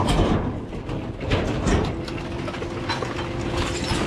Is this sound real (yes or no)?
yes